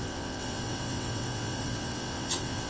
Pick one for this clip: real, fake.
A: fake